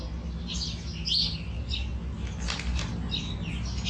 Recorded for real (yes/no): yes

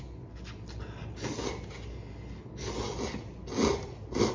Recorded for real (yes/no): yes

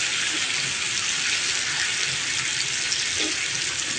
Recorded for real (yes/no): yes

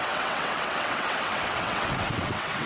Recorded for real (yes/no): no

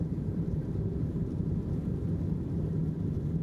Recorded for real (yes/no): yes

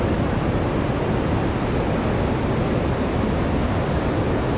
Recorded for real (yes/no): yes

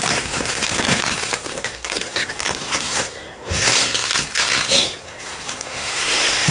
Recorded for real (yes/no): no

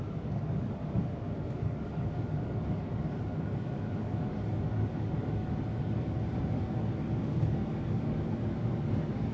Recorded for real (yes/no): no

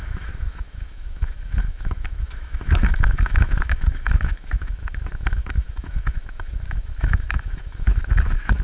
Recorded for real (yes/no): no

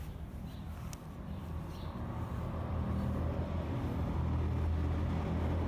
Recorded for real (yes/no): yes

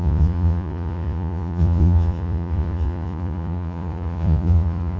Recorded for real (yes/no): no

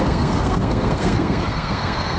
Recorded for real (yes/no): no